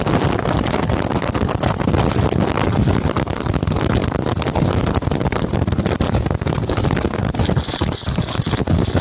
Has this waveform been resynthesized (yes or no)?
no